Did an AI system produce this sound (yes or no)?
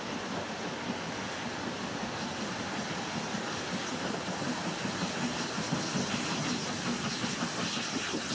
no